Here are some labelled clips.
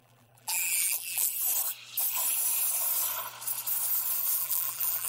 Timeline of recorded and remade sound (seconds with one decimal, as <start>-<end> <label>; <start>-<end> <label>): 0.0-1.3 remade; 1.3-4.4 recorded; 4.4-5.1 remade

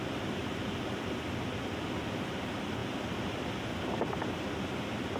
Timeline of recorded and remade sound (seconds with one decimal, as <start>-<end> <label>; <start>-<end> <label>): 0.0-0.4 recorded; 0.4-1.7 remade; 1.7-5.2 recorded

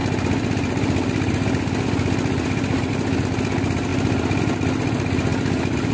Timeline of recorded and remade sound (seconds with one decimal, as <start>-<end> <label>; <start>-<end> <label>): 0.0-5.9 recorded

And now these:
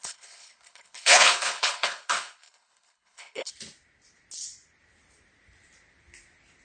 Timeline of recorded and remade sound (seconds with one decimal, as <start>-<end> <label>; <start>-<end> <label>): 0.0-3.5 remade; 3.5-6.6 recorded

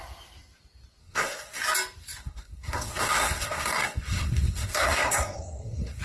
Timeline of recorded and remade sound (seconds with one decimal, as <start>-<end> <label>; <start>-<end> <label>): 0.0-1.0 recorded; 1.0-1.6 remade; 1.6-2.2 recorded; 2.2-6.0 remade

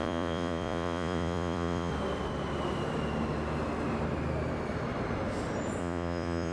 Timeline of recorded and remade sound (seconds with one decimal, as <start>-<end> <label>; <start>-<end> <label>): 0.0-1.9 remade; 1.9-5.8 recorded; 5.8-6.5 remade

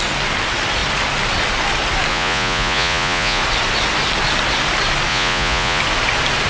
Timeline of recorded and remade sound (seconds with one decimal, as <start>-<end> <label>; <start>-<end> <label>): 0.0-2.1 recorded; 2.1-3.4 remade; 3.4-5.1 recorded; 5.1-5.8 remade; 5.8-6.5 recorded